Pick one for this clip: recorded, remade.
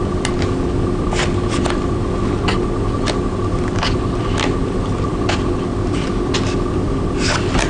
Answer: recorded